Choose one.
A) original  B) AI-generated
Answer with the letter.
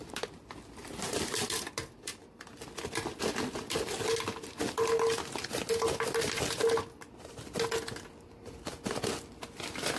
A